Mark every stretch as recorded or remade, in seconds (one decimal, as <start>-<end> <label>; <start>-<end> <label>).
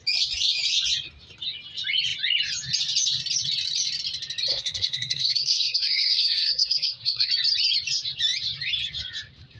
0.0-4.5 recorded; 4.5-7.3 remade; 7.3-9.6 recorded